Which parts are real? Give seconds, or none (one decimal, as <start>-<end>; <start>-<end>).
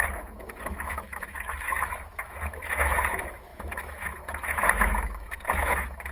none